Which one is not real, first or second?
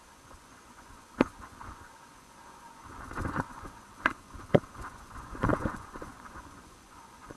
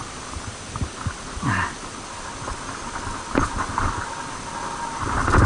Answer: first